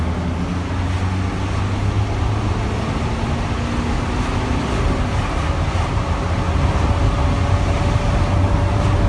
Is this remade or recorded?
recorded